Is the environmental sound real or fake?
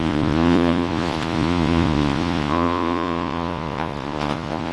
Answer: fake